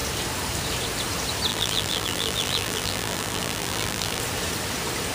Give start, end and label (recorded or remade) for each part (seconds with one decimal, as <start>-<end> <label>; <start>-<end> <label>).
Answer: 0.0-1.5 recorded; 1.5-4.2 remade; 4.2-5.1 recorded